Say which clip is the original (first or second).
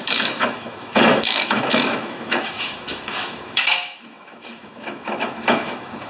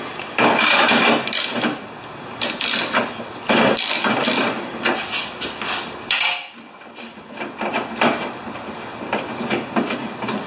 second